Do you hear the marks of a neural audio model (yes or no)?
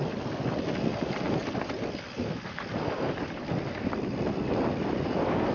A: no